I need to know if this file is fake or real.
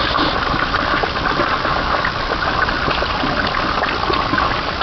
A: real